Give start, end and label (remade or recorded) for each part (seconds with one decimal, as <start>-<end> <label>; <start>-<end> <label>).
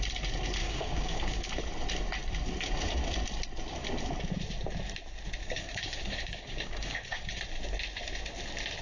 0.0-0.6 recorded; 0.6-1.5 remade; 1.5-5.4 recorded; 5.4-7.4 remade; 7.4-8.8 recorded